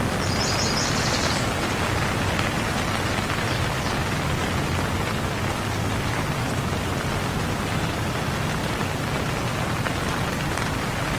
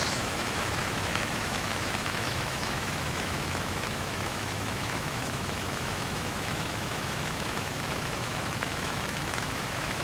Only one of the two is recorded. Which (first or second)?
first